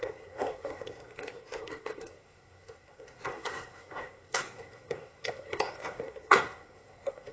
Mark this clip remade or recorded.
remade